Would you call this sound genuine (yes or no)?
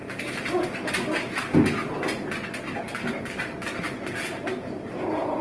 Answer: yes